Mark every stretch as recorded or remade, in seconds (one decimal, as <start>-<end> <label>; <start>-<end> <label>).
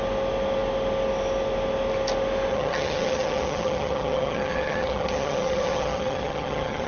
0.0-2.5 recorded; 2.5-6.9 remade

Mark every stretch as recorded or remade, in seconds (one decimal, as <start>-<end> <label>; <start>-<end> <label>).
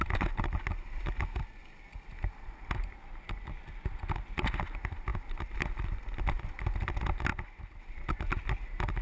0.0-7.3 recorded; 7.3-7.8 remade; 7.8-9.0 recorded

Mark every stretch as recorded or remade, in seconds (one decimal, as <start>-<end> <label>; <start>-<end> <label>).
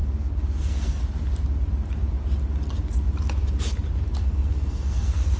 0.0-0.6 recorded; 0.6-1.0 remade; 1.0-4.2 recorded; 4.2-5.4 remade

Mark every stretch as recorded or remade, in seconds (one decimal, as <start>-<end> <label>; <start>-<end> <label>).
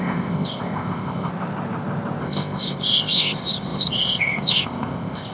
0.0-1.3 remade; 1.3-2.2 recorded; 2.2-5.3 remade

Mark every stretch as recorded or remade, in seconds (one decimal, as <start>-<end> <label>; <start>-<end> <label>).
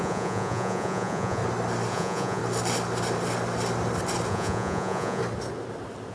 0.0-1.4 remade; 1.4-1.9 recorded; 1.9-2.4 remade; 2.4-4.3 recorded; 4.3-5.2 remade; 5.2-6.1 recorded